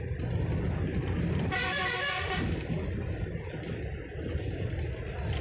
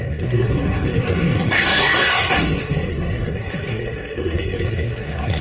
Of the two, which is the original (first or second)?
first